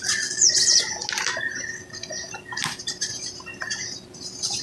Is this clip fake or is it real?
real